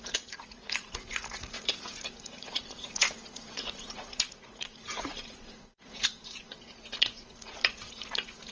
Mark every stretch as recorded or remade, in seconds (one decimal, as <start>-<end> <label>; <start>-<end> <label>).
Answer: 0.0-8.5 remade